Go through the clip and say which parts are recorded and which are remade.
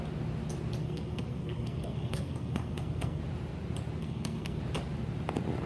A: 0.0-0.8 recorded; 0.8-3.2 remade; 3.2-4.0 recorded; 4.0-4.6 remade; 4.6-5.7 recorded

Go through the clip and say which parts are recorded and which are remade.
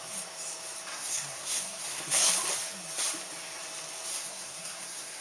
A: 0.0-0.9 recorded; 0.9-2.3 remade; 2.3-4.1 recorded; 4.1-5.2 remade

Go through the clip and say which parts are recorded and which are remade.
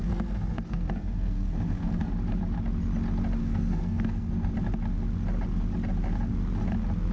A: 0.0-2.1 remade; 2.1-3.4 recorded; 3.4-4.5 remade; 4.5-7.1 recorded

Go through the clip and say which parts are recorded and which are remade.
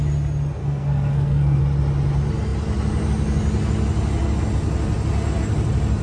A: 0.0-0.6 recorded; 0.6-1.6 remade; 1.6-6.0 recorded